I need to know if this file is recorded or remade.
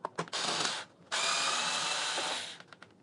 recorded